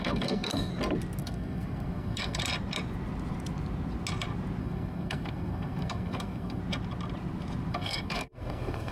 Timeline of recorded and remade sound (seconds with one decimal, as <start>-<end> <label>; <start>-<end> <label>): 0.0-0.7 remade; 0.7-1.2 recorded; 1.2-2.4 remade; 2.4-4.6 recorded; 4.6-6.6 remade; 6.6-7.7 recorded; 7.7-8.9 remade